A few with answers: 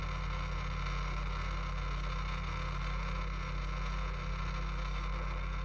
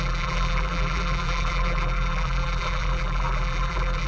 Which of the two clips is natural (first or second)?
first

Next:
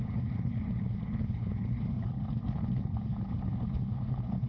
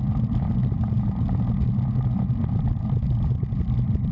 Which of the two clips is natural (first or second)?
second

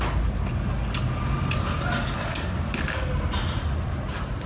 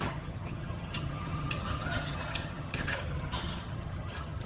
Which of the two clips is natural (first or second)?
first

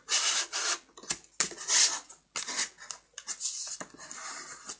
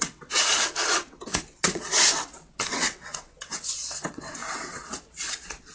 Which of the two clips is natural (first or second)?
first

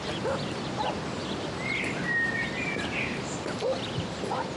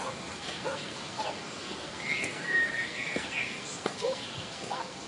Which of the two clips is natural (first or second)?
first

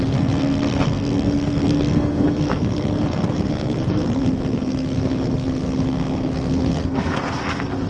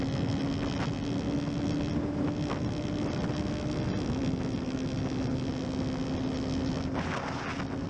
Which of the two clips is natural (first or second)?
second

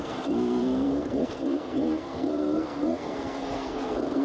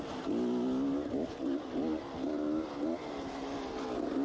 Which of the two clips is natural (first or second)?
second